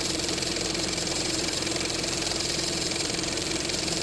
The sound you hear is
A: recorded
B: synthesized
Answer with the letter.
B